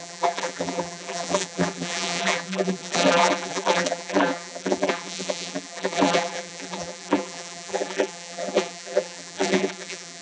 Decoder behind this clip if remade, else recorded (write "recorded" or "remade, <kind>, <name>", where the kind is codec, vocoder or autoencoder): remade, vocoder, BigVGAN v2